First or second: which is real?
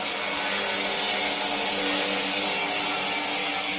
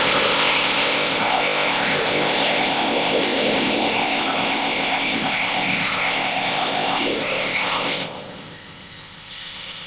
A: first